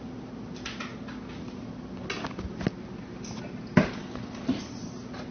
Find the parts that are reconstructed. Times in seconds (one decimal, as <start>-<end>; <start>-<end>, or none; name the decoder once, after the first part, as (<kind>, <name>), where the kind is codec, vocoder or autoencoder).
none